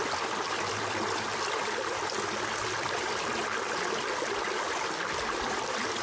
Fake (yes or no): no